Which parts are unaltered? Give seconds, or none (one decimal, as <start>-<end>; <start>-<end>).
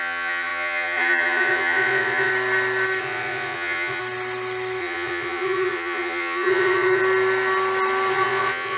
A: 2.3-3.0; 4.0-4.8; 7.0-8.1